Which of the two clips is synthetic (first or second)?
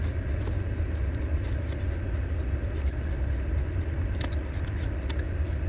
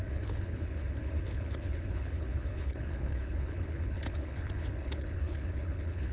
second